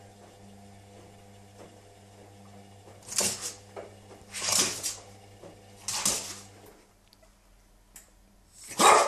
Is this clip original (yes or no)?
yes